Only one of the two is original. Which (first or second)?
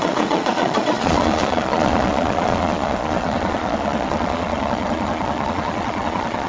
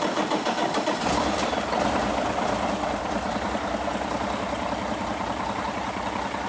second